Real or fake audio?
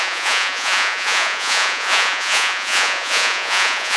fake